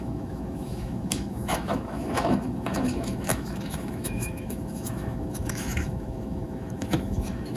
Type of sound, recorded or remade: remade